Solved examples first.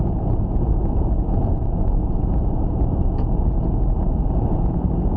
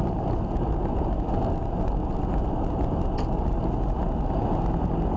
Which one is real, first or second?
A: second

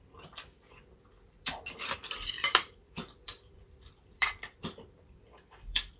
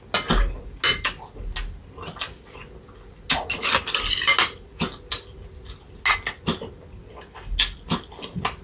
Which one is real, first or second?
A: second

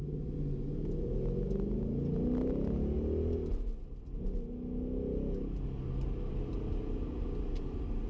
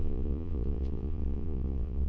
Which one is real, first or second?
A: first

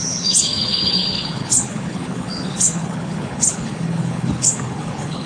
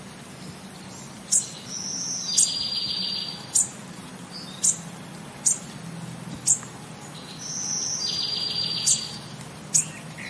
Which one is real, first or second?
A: second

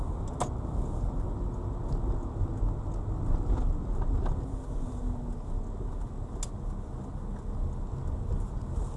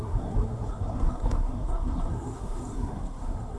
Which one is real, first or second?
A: first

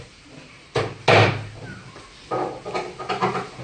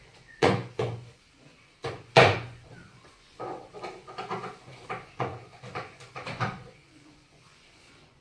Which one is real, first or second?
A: first